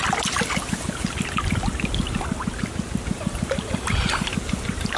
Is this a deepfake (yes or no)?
no